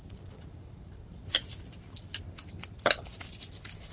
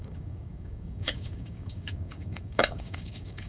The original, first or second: first